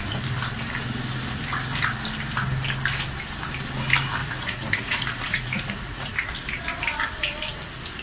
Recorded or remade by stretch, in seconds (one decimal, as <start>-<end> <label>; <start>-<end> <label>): 0.0-4.2 recorded; 4.2-6.1 remade; 6.1-8.0 recorded